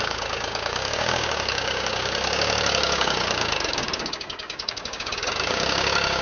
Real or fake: fake